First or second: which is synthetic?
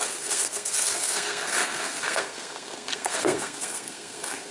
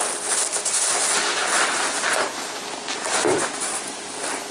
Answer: first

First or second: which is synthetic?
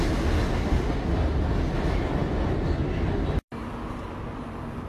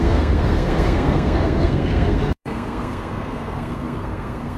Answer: second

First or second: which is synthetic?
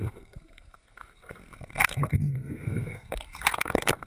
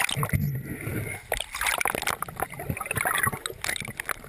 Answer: first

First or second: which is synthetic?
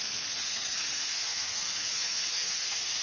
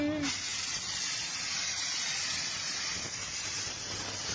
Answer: first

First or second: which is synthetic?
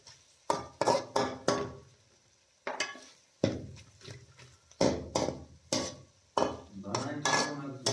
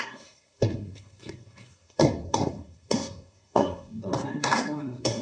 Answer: second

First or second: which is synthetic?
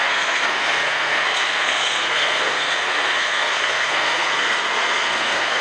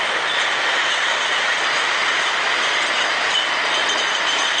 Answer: first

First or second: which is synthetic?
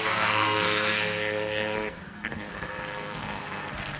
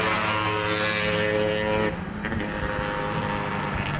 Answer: first